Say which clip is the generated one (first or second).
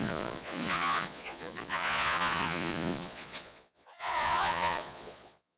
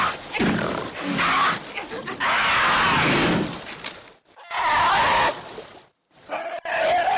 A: first